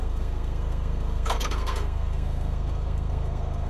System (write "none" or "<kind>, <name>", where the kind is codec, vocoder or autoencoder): codec, SNAC